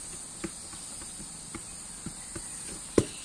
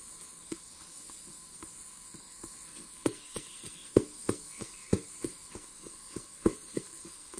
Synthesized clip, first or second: second